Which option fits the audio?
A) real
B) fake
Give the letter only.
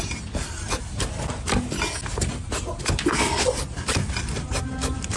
A